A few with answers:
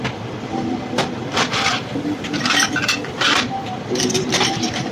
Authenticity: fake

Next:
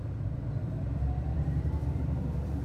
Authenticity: fake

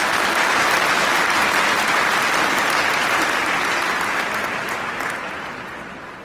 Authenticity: real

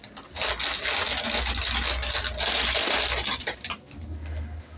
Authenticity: real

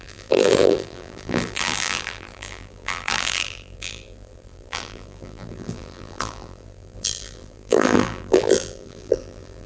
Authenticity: fake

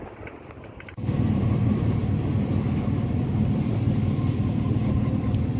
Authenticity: fake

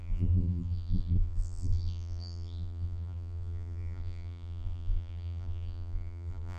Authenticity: fake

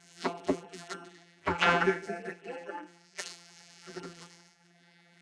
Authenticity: fake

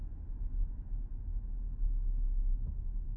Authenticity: real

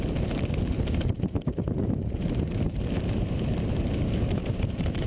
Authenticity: fake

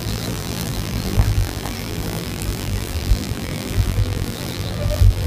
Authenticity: fake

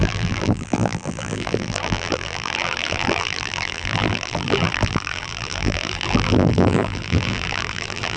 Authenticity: fake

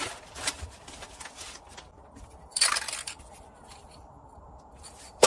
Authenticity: fake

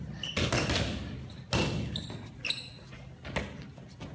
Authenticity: real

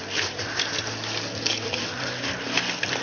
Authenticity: fake